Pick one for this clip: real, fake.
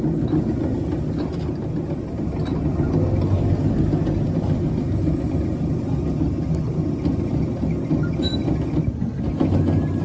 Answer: real